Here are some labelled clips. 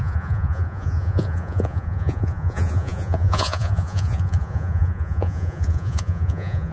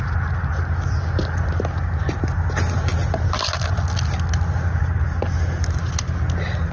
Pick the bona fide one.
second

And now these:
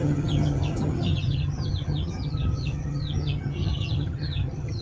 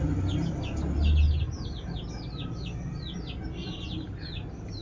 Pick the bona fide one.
second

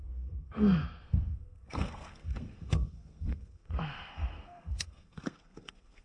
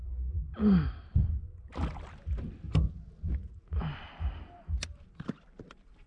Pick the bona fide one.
second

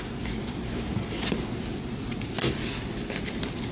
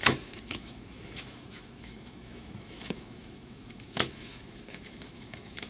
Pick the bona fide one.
first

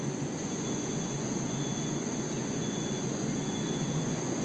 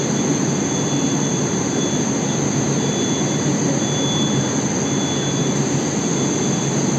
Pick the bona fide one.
second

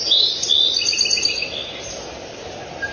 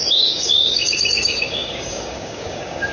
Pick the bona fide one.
first